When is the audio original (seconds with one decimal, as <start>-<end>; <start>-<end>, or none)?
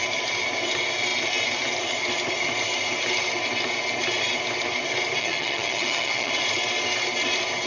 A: 0.0-5.2; 6.3-7.7